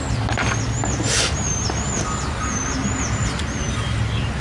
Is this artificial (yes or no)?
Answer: no